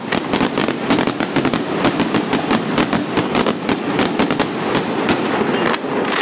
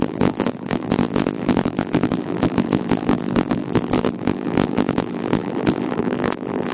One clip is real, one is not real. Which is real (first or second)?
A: first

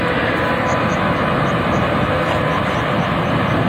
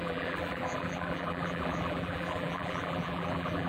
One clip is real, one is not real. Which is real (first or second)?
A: first